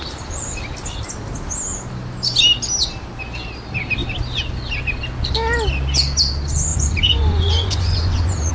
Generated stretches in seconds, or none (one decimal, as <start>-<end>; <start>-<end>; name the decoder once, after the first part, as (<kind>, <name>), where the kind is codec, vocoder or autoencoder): 6.7-8.5 (vocoder, Vocos)